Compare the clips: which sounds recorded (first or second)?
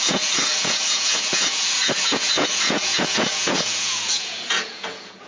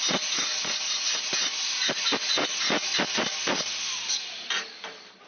second